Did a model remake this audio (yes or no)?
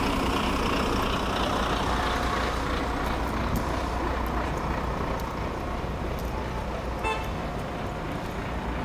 no